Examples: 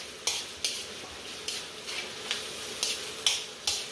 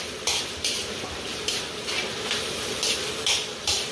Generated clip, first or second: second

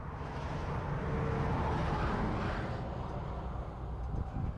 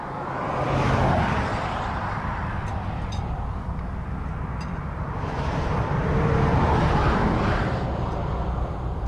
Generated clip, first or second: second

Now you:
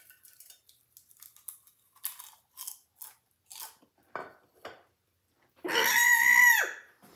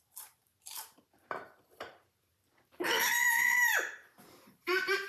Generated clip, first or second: second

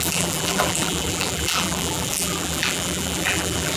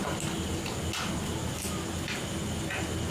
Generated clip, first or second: first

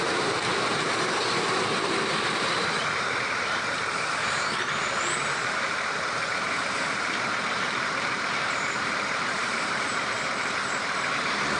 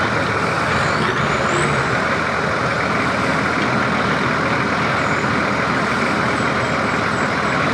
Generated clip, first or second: first